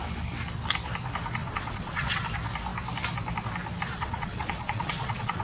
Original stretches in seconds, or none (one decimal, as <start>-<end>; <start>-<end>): 0.0-1.4; 2.2-3.9